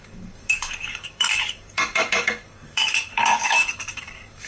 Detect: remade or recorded remade